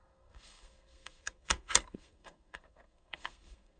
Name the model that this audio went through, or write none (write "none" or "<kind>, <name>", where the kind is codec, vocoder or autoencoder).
codec, SNAC